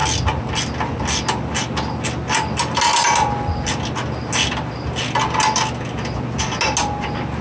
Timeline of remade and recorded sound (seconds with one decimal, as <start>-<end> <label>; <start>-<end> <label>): 0.0-7.4 recorded